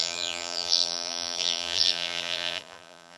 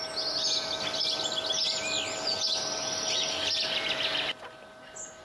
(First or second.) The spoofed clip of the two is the first